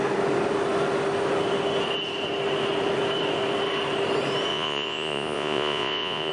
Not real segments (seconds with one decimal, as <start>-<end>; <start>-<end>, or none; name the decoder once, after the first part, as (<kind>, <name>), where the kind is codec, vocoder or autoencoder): 4.5-6.3 (vocoder, Vocos)